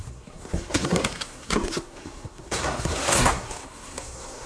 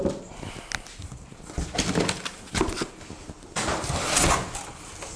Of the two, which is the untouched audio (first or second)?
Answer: second